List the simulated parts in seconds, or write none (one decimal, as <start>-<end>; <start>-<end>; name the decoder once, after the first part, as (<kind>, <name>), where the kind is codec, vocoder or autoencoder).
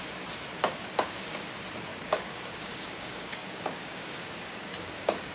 0.6-1.5 (codec, DAC); 1.9-5.3